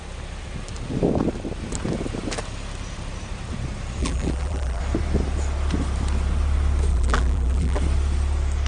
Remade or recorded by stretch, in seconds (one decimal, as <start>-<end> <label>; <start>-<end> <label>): 0.0-4.0 recorded; 4.0-4.8 remade; 4.8-6.9 recorded; 6.9-7.8 remade; 7.8-8.7 recorded